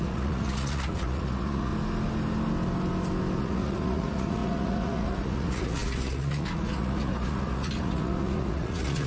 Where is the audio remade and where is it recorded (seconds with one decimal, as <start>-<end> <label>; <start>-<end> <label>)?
0.0-1.7 remade; 1.7-3.4 recorded; 3.4-9.1 remade